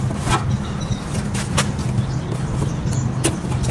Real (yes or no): yes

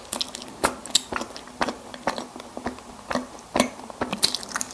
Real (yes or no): yes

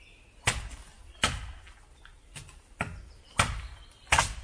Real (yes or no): yes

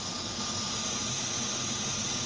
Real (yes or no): yes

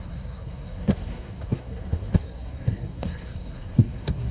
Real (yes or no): no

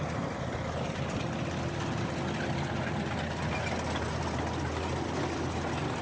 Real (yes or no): yes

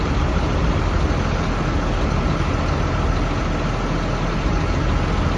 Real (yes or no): yes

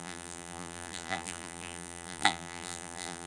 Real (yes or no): no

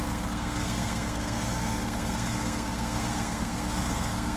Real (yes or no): no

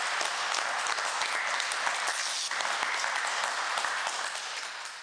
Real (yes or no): yes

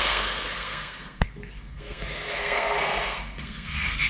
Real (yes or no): no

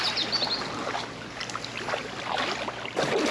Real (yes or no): yes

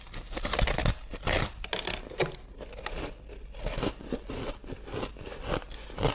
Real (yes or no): yes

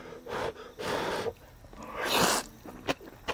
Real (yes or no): yes